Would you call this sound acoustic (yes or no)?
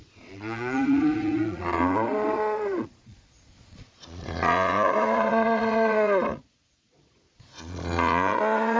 no